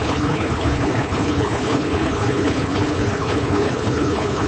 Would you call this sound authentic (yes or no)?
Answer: no